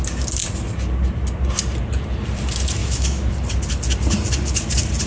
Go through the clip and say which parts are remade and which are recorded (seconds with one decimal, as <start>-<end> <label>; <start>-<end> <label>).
0.0-2.8 recorded; 2.8-3.3 remade; 3.3-5.1 recorded